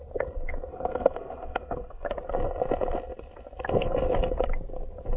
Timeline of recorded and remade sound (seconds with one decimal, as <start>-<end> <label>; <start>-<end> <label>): 0.0-0.7 recorded; 0.7-2.1 remade; 2.1-5.2 recorded